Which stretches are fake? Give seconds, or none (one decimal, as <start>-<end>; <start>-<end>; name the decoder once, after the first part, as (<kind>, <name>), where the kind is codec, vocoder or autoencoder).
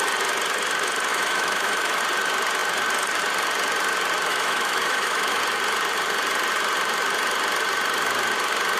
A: 1.1-2.0 (autoencoder, DAC-VAE); 4.3-5.4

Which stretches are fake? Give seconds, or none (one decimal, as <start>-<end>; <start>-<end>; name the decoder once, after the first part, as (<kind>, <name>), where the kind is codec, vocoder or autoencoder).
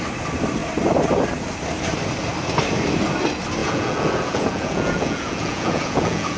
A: 3.6-6.4 (vocoder, Vocos)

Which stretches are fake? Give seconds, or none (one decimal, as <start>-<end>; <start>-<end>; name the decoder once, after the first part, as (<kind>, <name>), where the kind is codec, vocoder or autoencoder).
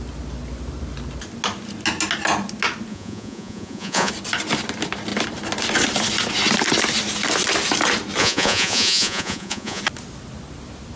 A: 2.9-4.1 (vocoder, Vocos); 8.2-9.8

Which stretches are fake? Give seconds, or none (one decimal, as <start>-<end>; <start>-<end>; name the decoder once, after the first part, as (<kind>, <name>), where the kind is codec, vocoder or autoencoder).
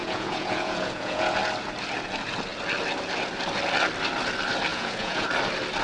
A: 0.0-1.4 (vocoder, Vocos); 4.7-5.3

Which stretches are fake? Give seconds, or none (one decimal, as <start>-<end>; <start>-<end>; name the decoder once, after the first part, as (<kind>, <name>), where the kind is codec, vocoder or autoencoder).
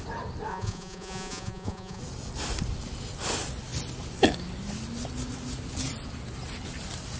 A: 0.5-2.0 (vocoder, Vocos)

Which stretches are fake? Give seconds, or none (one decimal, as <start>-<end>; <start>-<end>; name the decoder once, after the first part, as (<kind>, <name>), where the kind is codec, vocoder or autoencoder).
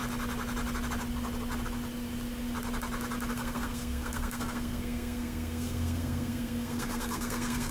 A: 3.3-7.7 (codec, SNAC)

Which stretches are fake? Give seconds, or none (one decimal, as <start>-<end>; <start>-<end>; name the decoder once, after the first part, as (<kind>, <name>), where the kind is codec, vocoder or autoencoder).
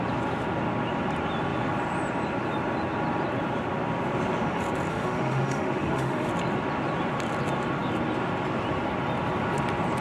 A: 4.9-6.3 (autoencoder, DAC-VAE)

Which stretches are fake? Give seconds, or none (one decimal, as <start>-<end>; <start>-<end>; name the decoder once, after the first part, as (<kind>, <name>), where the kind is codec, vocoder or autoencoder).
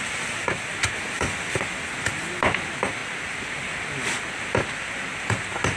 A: none